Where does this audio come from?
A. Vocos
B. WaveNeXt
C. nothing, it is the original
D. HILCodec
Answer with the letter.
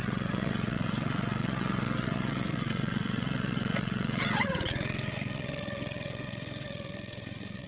B